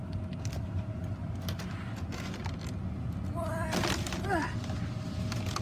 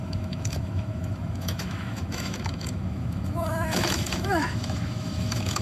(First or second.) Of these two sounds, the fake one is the second